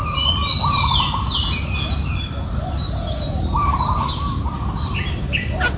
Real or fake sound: real